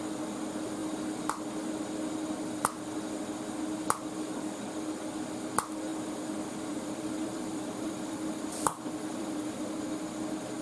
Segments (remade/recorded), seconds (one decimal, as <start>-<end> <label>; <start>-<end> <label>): 0.0-5.9 recorded; 5.9-9.7 remade; 9.7-10.6 recorded